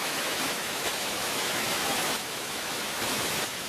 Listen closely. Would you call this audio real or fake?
fake